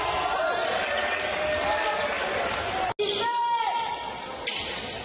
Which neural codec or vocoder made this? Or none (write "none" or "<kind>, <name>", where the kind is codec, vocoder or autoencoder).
none